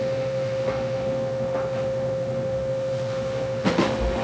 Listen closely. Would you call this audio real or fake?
fake